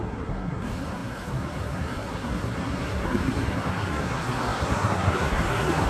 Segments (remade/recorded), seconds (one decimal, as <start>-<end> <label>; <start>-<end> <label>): 0.0-5.9 remade